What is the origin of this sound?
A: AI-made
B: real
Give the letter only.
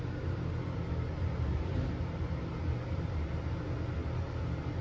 B